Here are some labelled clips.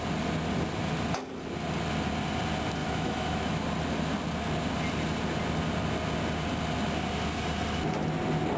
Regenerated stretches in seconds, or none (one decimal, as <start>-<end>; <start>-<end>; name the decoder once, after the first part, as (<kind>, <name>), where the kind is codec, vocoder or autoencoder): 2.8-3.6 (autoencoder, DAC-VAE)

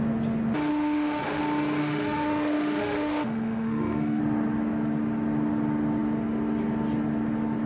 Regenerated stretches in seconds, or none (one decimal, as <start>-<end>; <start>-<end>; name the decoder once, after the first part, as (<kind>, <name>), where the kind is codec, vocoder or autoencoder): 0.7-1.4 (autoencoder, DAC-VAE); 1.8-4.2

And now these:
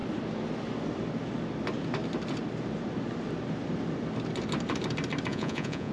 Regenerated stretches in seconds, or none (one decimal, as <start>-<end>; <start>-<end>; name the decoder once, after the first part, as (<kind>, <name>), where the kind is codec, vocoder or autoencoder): 5.3-5.9 (vocoder, Vocos)

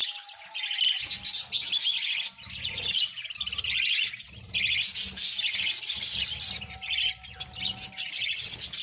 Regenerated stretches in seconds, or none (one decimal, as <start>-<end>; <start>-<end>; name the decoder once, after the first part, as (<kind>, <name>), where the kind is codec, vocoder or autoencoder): 5.7-6.9 (vocoder, BigVGAN v2)

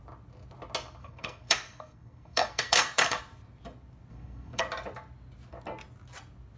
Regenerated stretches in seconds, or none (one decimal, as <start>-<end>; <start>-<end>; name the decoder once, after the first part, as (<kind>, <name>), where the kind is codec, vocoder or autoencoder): 1.0-3.2 (codec, SNAC); 4.1-4.6

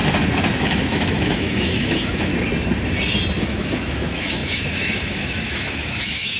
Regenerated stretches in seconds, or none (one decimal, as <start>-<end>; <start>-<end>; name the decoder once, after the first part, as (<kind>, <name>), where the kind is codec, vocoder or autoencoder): 0.6-2.3 (autoencoder, DAC-VAE); 3.4-6.4

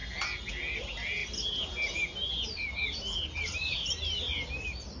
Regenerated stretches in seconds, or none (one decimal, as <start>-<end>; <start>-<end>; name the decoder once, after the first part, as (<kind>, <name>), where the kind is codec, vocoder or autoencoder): none

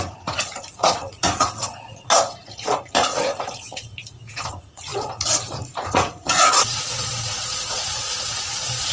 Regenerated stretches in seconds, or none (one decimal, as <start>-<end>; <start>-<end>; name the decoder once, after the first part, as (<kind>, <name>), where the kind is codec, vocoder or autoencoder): 0.0-8.9 (vocoder, Vocos)